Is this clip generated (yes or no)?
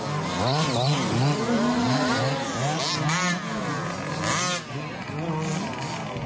no